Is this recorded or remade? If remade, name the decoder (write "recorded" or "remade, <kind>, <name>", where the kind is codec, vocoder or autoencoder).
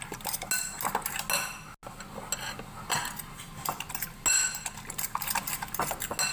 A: recorded